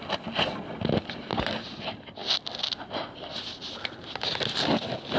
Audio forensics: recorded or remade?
recorded